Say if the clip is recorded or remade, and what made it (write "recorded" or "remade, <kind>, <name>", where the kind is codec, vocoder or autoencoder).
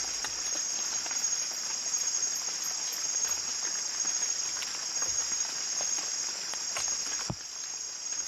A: recorded